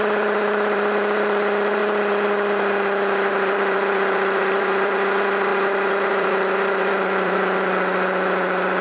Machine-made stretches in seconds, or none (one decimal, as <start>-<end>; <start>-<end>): 0.0-1.8; 3.3-8.8